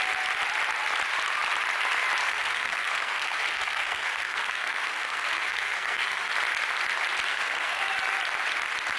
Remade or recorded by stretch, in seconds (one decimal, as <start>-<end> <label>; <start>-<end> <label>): 0.0-2.2 recorded; 2.2-6.3 remade; 6.3-7.3 recorded; 7.3-7.8 remade; 7.8-9.0 recorded